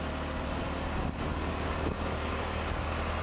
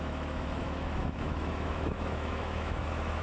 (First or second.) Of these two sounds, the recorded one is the first